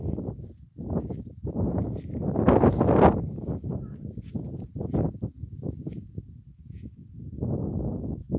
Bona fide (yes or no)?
yes